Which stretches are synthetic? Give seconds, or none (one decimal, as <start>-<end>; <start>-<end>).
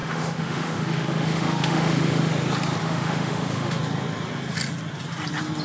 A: 0.0-2.3; 2.8-3.8